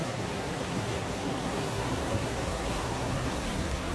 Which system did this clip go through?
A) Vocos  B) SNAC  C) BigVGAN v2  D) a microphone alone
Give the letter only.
B